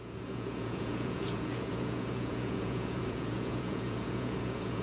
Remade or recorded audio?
remade